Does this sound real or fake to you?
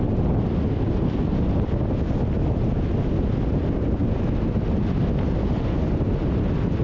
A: real